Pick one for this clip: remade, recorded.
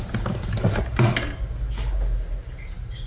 recorded